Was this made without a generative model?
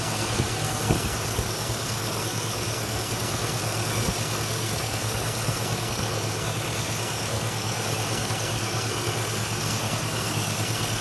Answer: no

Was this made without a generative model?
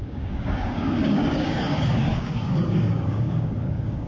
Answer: no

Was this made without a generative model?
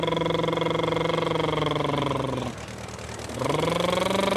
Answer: yes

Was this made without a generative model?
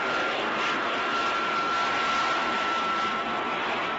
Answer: yes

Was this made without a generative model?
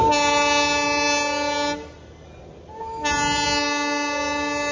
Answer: yes